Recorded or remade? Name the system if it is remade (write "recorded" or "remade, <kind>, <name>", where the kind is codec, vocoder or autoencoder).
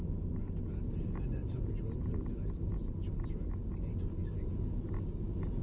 recorded